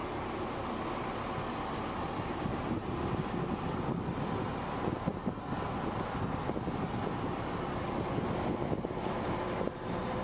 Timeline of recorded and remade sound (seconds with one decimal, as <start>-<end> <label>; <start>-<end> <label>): 0.0-10.2 recorded